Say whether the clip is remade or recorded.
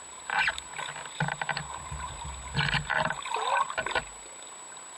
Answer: recorded